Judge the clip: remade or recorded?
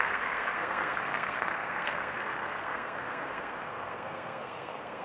remade